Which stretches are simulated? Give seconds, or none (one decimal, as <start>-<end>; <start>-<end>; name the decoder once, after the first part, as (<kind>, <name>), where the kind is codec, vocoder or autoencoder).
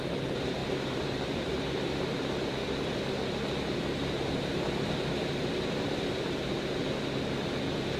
0.6-1.6 (vocoder, BigVGAN v2)